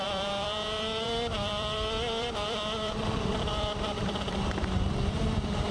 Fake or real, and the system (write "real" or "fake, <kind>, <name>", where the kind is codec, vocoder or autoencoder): fake, vocoder, BigVGAN v2